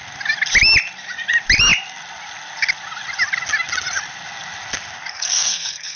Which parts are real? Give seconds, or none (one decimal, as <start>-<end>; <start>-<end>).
0.0-5.1

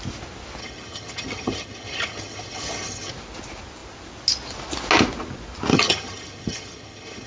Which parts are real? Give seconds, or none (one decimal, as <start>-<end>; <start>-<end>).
0.0-0.6; 3.1-5.7

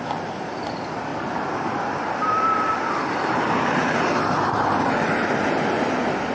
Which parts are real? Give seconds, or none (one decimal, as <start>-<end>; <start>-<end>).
0.0-6.3

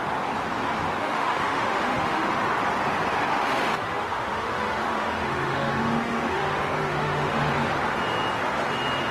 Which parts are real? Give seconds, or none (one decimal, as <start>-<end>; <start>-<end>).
0.0-1.0; 2.3-3.3; 7.5-9.1

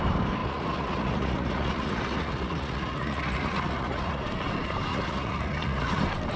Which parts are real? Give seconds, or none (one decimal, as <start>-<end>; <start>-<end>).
0.0-0.4; 4.2-4.9; 6.0-6.4

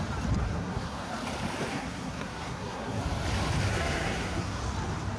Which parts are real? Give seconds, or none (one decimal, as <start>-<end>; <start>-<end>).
0.0-0.4; 1.1-1.7; 3.0-3.7; 4.6-5.2

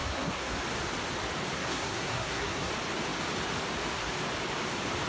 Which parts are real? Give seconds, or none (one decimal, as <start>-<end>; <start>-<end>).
0.6-1.5; 2.7-5.1